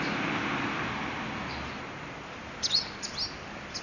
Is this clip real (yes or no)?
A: yes